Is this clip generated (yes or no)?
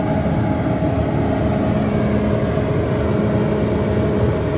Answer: no